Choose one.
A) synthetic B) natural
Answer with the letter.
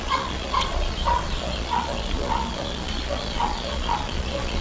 A